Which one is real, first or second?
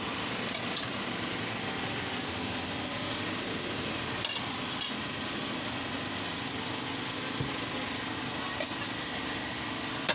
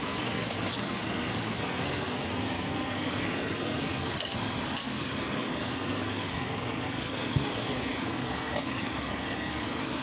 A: first